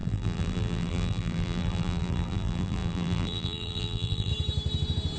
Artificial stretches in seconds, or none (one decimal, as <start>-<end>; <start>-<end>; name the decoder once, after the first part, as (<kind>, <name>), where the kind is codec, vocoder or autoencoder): 0.0-4.3 (vocoder, BigVGAN v2)